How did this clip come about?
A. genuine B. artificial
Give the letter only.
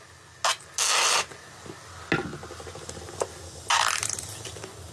A